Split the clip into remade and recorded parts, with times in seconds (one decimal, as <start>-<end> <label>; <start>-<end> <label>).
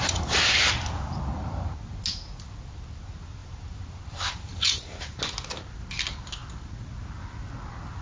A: 0.0-3.4 recorded; 3.4-4.0 remade; 4.0-4.5 recorded; 4.5-5.3 remade; 5.3-8.0 recorded